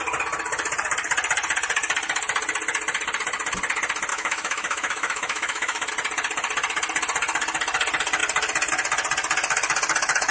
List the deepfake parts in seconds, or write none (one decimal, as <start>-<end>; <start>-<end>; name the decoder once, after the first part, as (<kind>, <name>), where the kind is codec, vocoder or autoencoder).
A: 4.1-5.9 (autoencoder, DAC-VAE)